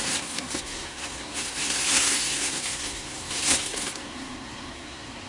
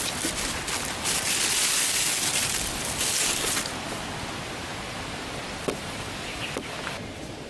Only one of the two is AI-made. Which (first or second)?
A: first